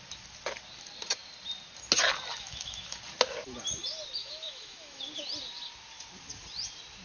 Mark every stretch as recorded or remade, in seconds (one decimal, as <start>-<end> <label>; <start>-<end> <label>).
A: 0.0-2.3 recorded; 2.3-3.0 remade; 3.0-4.2 recorded; 4.2-5.0 remade; 5.0-7.0 recorded